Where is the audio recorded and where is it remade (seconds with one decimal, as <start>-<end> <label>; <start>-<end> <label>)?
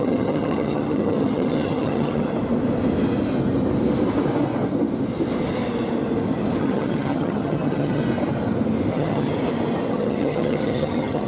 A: 0.0-2.3 remade; 2.3-6.6 recorded; 6.6-8.0 remade; 8.0-8.9 recorded; 8.9-9.3 remade; 9.3-9.9 recorded; 9.9-11.3 remade